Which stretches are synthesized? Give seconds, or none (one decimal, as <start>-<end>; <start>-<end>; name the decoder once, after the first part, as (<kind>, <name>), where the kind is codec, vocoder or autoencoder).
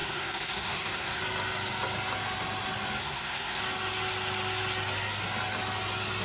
0.0-1.2 (codec, SNAC); 3.0-3.6